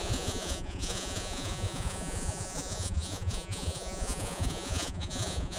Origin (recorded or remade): remade